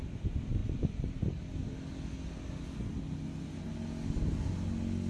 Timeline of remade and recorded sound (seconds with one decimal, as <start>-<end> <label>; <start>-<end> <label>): 0.0-0.6 recorded; 0.6-1.4 remade; 1.4-5.1 recorded